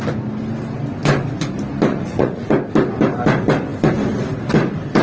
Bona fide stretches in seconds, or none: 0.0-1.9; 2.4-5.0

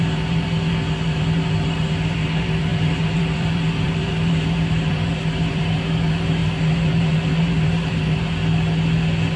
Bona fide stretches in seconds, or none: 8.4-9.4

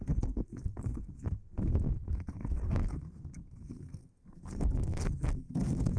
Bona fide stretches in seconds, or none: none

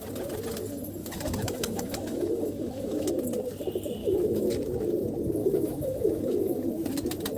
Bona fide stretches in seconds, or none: 0.0-1.0; 3.1-4.0; 4.5-5.4; 6.7-7.4

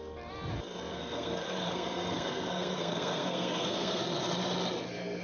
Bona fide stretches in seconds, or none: 0.0-0.9; 4.0-5.2